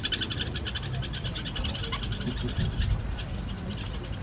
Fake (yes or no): no